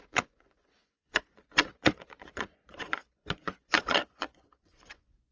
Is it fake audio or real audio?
fake